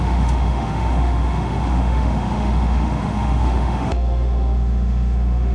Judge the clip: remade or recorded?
remade